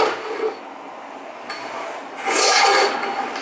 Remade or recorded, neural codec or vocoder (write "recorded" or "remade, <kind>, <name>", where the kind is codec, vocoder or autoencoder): recorded